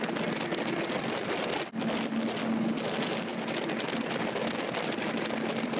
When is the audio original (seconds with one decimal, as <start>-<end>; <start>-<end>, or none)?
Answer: 0.0-5.8